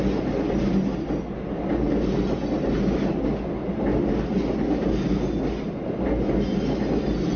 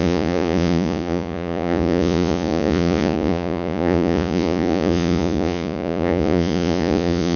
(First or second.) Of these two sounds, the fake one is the second